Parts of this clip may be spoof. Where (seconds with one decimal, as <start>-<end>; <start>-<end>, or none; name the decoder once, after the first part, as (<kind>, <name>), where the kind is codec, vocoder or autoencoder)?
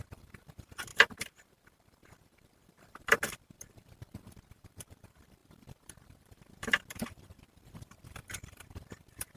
0.0-9.4 (vocoder, BigVGAN v2)